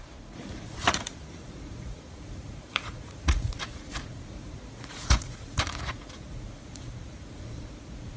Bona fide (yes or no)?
no